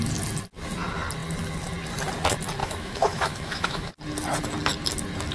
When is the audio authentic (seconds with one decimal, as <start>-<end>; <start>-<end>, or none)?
0.0-2.6; 3.9-5.3